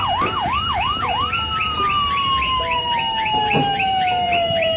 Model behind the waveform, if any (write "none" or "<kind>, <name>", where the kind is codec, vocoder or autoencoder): vocoder, BigVGAN v2